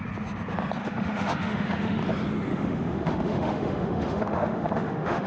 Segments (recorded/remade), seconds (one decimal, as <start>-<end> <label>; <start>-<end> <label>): 0.0-0.8 recorded; 0.8-2.0 remade; 2.0-2.5 recorded; 2.5-5.3 remade